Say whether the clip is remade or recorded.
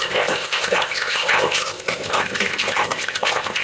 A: remade